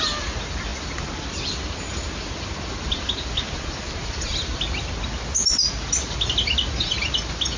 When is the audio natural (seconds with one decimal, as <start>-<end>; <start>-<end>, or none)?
0.0-7.6